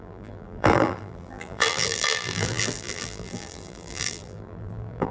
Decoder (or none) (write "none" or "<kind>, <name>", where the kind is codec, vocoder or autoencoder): vocoder, BigVGAN v2